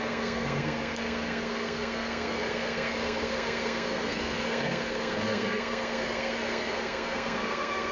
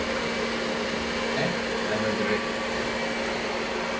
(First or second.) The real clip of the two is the second